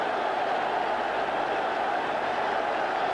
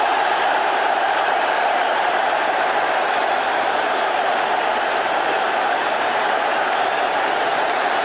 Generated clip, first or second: second